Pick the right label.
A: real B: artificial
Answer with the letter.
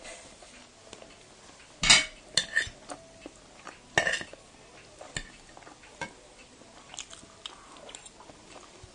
A